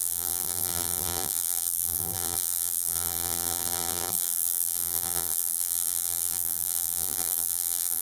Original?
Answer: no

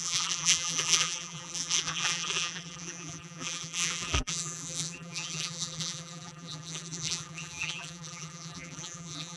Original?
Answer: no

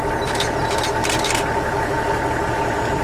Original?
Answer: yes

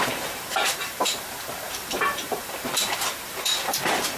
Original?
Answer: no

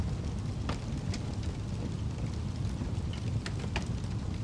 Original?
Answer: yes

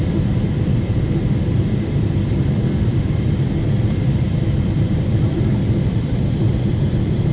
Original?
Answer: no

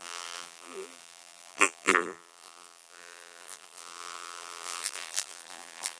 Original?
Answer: no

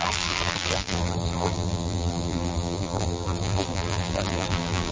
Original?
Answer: no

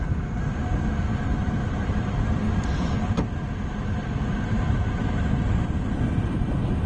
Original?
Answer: no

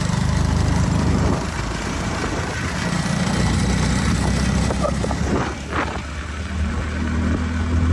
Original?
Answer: yes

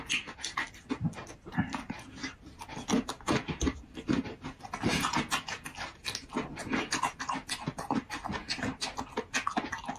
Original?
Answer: yes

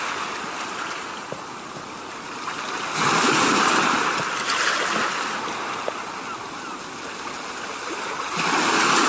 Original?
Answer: yes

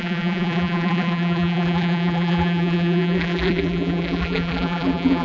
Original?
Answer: no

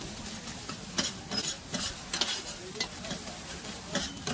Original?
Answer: yes